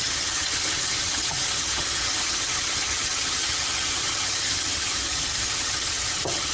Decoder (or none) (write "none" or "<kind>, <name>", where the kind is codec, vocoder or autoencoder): vocoder, HiFi-GAN